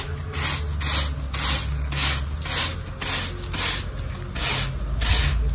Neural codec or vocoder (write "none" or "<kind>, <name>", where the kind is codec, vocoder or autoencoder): none